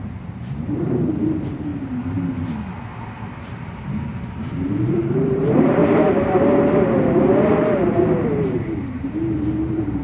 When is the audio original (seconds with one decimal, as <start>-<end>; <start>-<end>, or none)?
1.7-3.1; 5.8-8.3